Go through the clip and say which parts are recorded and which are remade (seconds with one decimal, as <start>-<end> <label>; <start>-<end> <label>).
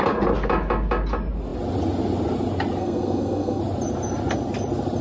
0.0-2.8 recorded; 2.8-3.6 remade; 3.6-5.0 recorded